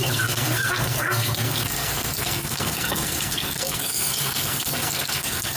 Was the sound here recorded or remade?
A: remade